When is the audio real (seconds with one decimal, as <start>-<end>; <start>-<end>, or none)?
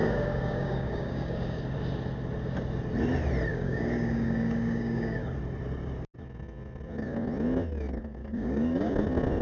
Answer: 1.6-3.5; 5.4-8.2; 8.9-9.4